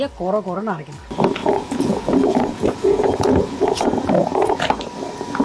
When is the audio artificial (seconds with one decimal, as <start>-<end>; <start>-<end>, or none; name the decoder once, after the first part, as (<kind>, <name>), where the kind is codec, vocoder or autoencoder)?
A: 1.4-4.6 (vocoder, Vocos)